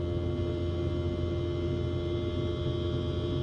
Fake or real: real